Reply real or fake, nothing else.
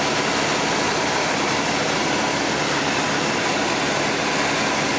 real